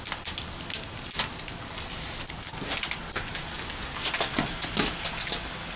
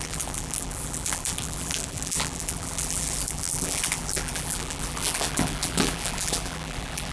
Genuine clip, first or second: first